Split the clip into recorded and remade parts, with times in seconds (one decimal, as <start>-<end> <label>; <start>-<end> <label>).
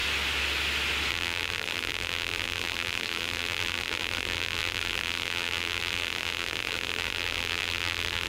0.0-1.1 recorded; 1.1-8.3 remade